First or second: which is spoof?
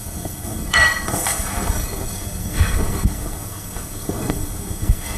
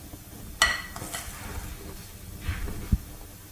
first